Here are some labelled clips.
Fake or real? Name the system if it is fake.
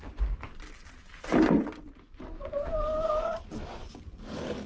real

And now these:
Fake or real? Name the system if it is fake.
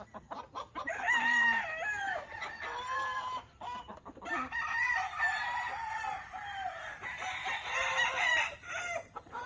fake, vocoder, BigVGAN v2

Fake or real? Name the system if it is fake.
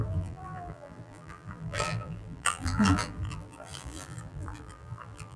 fake, vocoder, BigVGAN v2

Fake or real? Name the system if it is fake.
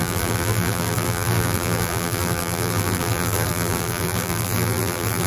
fake, vocoder, BigVGAN v2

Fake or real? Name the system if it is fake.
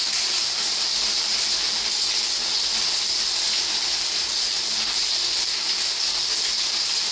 real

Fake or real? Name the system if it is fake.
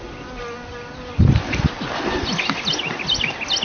real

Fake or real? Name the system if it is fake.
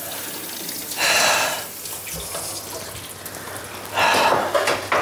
real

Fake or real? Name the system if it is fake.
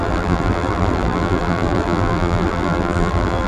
fake, vocoder, BigVGAN v2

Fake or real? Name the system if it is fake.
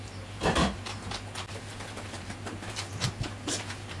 fake, vocoder, BigVGAN v2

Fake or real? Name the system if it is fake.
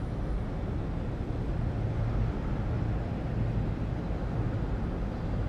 real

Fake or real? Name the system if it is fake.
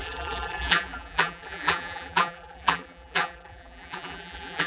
fake, vocoder, BigVGAN v2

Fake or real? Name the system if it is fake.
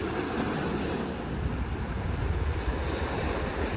real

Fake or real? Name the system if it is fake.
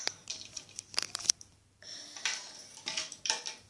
fake, vocoder, BigVGAN v2